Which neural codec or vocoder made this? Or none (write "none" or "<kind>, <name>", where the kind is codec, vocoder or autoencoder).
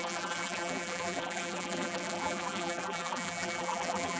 vocoder, BigVGAN v2